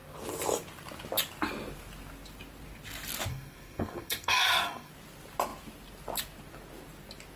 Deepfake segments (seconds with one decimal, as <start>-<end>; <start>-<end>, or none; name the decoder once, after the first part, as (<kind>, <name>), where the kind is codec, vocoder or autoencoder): 3.3-4.9 (codec, SNAC)

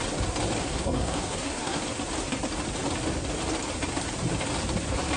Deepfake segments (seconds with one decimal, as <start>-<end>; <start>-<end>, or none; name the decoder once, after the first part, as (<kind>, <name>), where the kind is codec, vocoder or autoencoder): 0.6-1.8 (codec, SNAC)

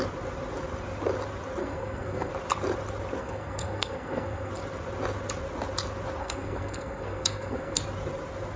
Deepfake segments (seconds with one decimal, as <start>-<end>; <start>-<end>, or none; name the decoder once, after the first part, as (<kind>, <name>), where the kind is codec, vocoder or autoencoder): 1.6-2.3 (codec, SNAC); 3.2-4.5; 6.2-7.8